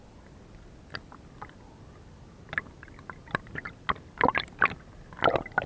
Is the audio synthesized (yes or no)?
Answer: no